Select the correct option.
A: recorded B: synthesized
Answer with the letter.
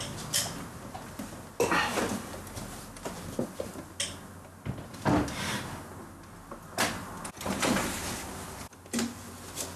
A